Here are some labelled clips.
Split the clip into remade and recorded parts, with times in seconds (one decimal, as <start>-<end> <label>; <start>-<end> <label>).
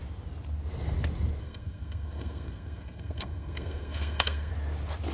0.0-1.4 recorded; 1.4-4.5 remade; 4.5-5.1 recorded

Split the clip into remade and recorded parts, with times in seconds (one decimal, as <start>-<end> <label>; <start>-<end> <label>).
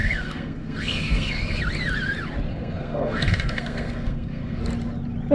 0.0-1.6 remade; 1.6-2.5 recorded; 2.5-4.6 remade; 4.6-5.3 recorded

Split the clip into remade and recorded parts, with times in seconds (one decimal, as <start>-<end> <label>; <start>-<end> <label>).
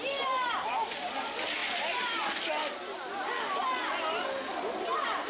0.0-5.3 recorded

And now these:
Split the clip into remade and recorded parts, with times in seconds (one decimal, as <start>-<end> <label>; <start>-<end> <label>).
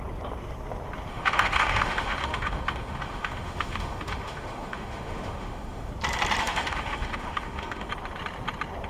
0.0-1.1 recorded; 1.1-5.9 remade; 5.9-6.4 recorded; 6.4-7.9 remade; 7.9-8.9 recorded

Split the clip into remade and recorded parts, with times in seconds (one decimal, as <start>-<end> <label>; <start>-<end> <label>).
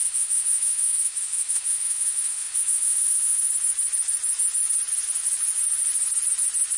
0.0-3.5 remade; 3.5-6.8 recorded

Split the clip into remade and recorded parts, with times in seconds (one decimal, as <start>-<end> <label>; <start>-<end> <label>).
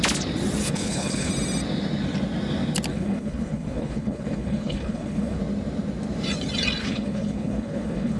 0.0-0.6 recorded; 0.6-1.3 remade; 1.3-2.9 recorded; 2.9-5.4 remade; 5.4-6.8 recorded; 6.8-8.2 remade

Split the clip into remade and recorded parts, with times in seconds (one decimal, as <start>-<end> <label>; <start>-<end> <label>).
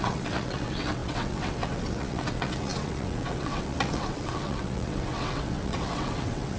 0.0-6.6 remade